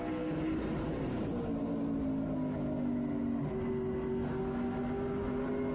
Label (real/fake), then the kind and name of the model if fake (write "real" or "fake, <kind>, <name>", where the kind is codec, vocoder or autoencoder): real